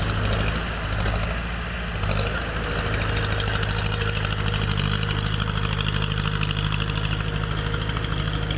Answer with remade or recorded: recorded